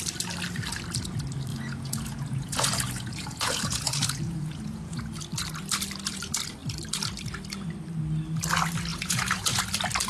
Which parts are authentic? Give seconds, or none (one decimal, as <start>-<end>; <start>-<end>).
0.0-1.5; 5.0-8.9; 9.6-10.1